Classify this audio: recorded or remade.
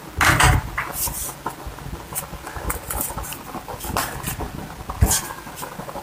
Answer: recorded